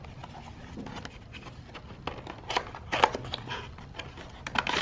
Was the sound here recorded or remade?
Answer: recorded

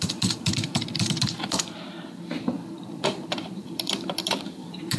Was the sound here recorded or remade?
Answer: remade